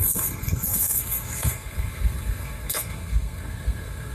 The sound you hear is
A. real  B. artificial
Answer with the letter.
B